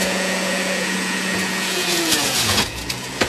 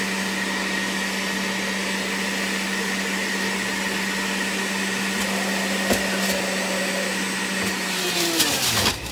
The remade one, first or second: first